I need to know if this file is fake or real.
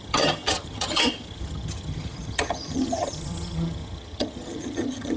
fake